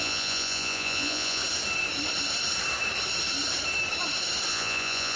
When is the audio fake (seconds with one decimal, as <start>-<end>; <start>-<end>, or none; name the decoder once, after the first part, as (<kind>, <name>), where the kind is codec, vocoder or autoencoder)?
0.0-1.4 (vocoder, Vocos); 4.5-5.2

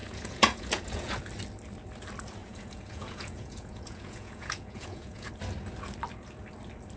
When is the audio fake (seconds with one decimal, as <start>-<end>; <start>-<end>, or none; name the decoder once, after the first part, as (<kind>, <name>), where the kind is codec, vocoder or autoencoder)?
0.0-1.2 (vocoder, Vocos); 2.4-5.3

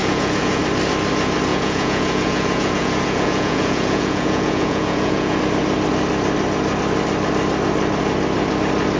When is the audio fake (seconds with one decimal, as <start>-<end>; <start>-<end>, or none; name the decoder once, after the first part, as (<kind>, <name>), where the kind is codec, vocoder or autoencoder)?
0.0-0.6 (vocoder, Vocos); 1.5-5.4

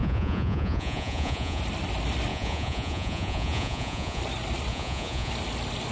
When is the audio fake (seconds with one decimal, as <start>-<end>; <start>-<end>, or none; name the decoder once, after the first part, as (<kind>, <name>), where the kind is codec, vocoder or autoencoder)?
0.0-1.6 (vocoder, Vocos); 2.3-4.2; 4.7-5.3